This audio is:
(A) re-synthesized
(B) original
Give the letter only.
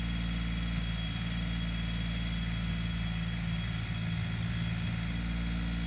B